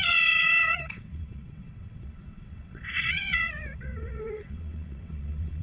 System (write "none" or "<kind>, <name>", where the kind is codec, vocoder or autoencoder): vocoder, WaveNeXt